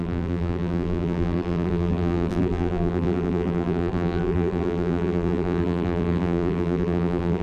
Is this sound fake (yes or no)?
yes